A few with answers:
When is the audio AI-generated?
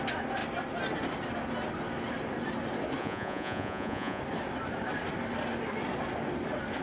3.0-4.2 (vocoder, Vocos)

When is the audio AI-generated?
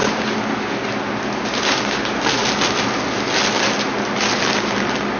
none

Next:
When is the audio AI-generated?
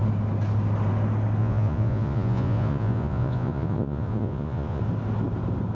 1.4-4.8 (vocoder, Vocos)